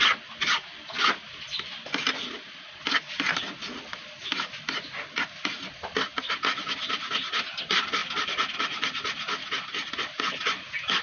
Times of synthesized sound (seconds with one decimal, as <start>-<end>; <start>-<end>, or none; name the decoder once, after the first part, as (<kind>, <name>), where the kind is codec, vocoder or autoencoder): none